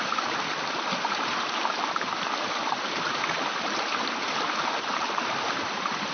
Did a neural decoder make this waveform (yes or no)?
yes